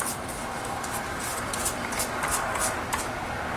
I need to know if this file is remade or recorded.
recorded